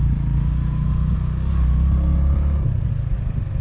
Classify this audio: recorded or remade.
recorded